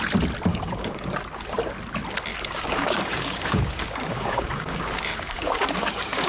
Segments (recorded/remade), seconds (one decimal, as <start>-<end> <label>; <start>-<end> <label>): 0.0-0.5 recorded; 0.5-1.1 remade; 1.1-2.3 recorded; 2.3-6.3 remade